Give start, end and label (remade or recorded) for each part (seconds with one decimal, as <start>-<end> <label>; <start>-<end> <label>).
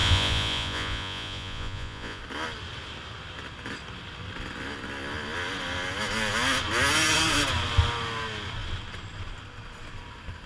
0.0-2.2 remade; 2.2-10.5 recorded